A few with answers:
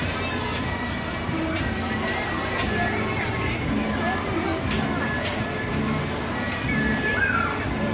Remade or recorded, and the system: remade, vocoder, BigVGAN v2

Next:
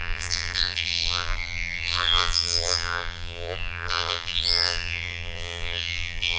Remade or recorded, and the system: remade, vocoder, BigVGAN v2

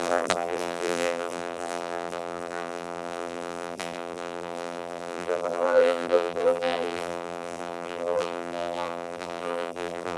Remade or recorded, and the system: remade, vocoder, BigVGAN v2